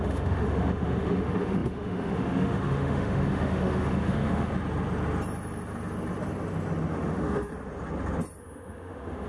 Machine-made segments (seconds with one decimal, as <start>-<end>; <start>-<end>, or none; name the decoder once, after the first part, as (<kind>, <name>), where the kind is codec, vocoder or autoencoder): 0.0-4.5 (autoencoder, DAC-VAE); 6.9-7.5; 8.4-9.3